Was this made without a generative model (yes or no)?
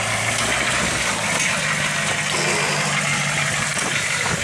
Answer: yes